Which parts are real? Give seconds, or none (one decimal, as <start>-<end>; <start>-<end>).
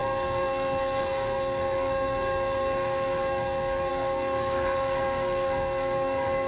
none